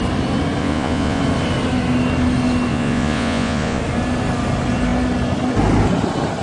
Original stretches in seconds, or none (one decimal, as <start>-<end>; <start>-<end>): 0.0-0.6; 1.2-2.7; 3.8-6.4